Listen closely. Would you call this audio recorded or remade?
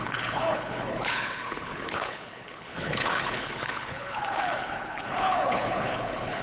remade